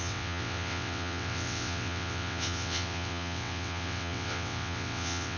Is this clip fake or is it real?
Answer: fake